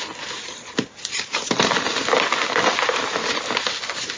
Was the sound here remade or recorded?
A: recorded